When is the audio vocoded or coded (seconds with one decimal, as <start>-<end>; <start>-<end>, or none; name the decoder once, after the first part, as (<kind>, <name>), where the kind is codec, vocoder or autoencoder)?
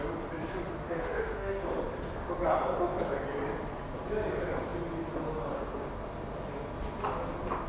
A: 0.8-1.8 (autoencoder, DAC-VAE)